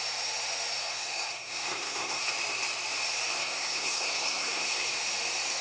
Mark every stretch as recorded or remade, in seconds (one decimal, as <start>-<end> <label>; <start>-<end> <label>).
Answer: 0.0-0.8 recorded; 0.8-2.3 remade; 2.3-3.4 recorded; 3.4-5.0 remade; 5.0-5.6 recorded